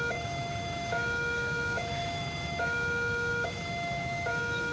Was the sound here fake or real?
fake